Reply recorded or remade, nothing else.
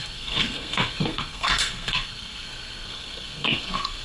remade